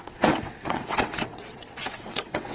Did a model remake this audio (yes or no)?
yes